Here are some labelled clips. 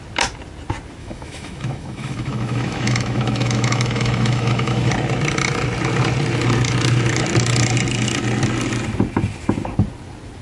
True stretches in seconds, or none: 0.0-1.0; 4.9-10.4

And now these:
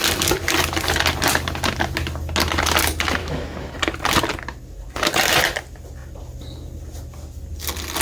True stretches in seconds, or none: 0.0-3.2; 3.7-8.0

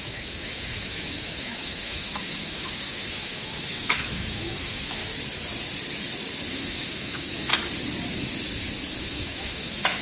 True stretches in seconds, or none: 5.0-6.5; 7.5-9.0

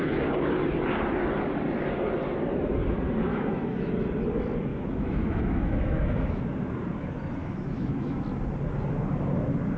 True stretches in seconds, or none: 0.0-3.3; 3.9-4.7; 6.4-7.4; 8.2-9.8

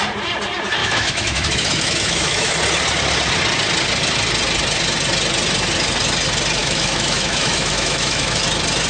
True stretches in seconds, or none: 0.0-0.8; 2.5-6.6; 8.4-8.9

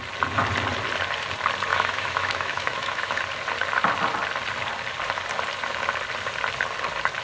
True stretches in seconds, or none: 0.0-1.7; 3.2-7.2

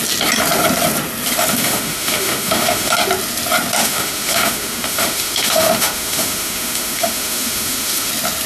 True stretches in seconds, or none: 0.0-1.5; 2.9-3.8; 8.1-8.5

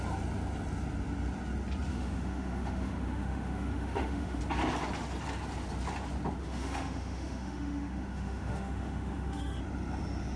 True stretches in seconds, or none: 0.0-1.9; 4.4-6.4; 9.6-10.4